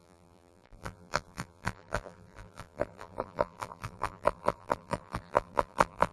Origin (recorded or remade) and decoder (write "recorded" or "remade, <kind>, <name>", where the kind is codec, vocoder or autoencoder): remade, vocoder, BigVGAN v2